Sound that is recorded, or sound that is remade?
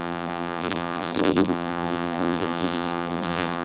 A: remade